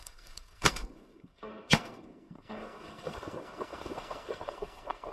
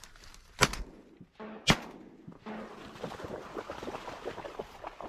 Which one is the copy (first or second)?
first